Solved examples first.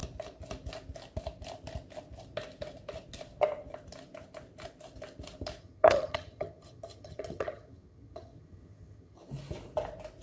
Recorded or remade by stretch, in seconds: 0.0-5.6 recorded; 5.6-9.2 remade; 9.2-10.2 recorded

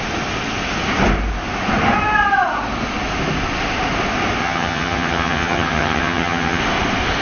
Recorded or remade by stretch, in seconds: 0.0-4.4 recorded; 4.4-6.6 remade; 6.6-7.2 recorded

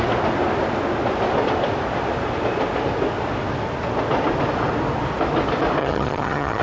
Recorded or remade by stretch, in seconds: 0.0-5.8 recorded; 5.8-6.6 remade

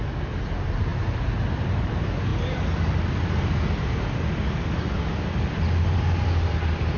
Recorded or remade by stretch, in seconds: 0.0-7.0 recorded

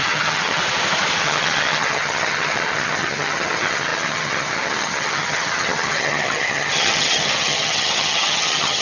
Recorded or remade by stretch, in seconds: 0.0-0.6 remade; 0.6-1.2 recorded; 1.2-8.8 remade

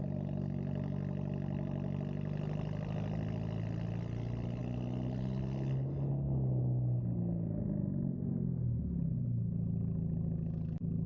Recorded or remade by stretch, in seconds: 0.0-11.1 recorded

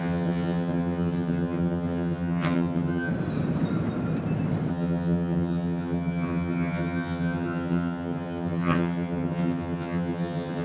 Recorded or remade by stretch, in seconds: 0.0-3.1 remade; 3.1-4.7 recorded; 4.7-10.6 remade

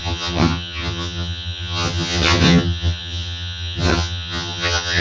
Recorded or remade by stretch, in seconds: 0.0-5.0 remade